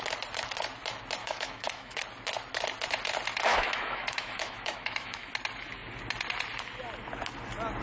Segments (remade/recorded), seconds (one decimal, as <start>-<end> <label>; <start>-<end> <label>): 0.0-1.2 recorded; 1.2-2.0 remade; 2.0-3.5 recorded; 3.5-5.3 remade; 5.3-7.8 recorded